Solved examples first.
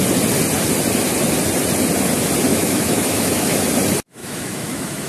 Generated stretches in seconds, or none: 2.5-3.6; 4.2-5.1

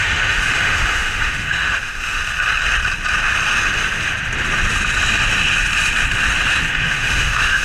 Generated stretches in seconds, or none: 0.0-2.2; 6.7-7.6

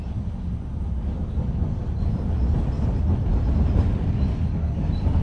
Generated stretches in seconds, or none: none

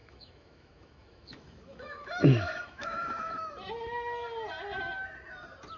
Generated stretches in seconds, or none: 0.0-3.5